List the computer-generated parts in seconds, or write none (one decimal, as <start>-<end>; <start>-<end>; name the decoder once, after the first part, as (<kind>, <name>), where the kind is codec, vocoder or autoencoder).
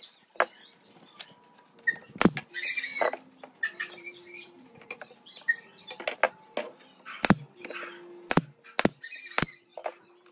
3.8-6.0 (vocoder, BigVGAN v2)